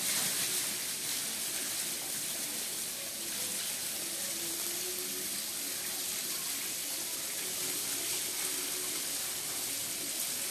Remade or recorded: recorded